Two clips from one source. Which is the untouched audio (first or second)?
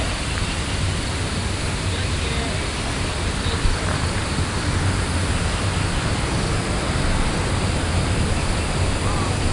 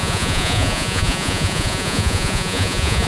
first